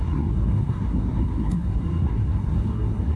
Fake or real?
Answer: fake